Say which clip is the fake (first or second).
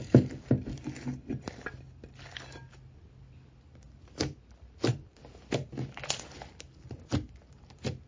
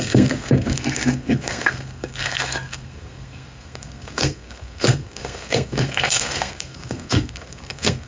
second